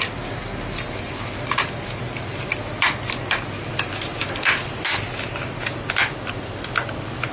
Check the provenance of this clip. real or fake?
real